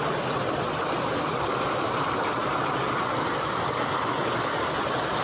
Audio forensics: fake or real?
real